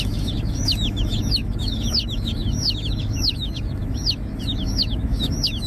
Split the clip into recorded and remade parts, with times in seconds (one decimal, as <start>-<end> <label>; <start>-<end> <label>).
0.0-5.7 remade